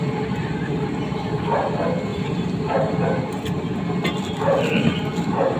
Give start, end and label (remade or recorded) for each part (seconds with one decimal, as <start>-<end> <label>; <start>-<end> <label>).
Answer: 0.0-2.1 recorded; 2.1-2.6 remade; 2.6-5.6 recorded